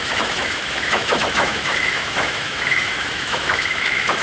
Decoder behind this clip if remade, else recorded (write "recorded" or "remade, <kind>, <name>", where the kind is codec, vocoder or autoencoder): remade, autoencoder, DAC-VAE